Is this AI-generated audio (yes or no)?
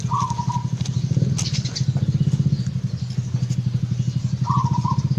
no